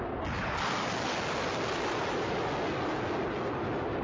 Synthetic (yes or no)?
no